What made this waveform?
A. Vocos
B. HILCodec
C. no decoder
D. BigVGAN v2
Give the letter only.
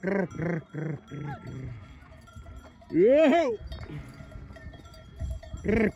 D